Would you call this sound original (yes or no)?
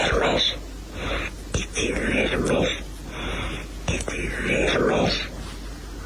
yes